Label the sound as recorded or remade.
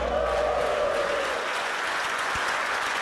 remade